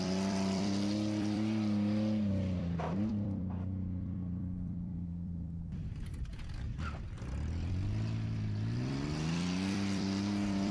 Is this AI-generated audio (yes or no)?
yes